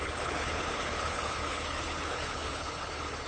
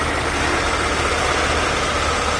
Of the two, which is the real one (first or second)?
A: second